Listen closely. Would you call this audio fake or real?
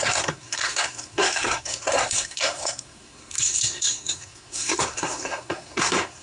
fake